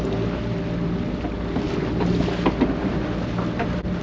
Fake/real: real